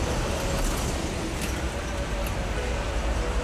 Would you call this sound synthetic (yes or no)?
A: no